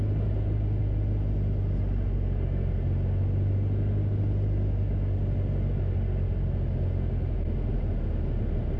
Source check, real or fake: real